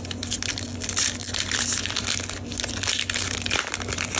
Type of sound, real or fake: real